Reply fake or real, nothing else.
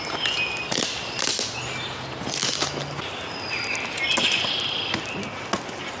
real